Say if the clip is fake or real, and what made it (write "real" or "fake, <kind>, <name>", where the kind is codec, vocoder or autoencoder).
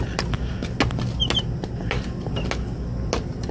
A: real